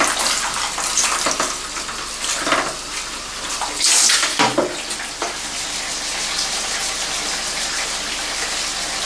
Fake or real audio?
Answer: real